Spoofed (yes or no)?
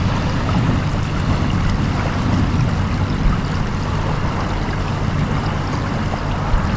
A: no